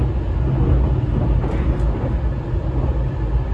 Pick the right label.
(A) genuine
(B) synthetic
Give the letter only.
A